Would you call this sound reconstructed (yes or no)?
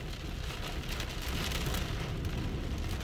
no